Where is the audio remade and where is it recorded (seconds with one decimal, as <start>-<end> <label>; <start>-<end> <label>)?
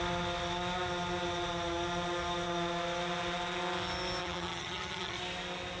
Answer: 0.0-4.2 recorded; 4.2-5.2 remade; 5.2-5.8 recorded